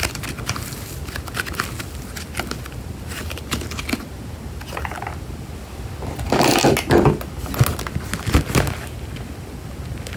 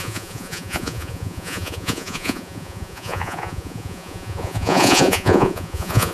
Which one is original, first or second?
first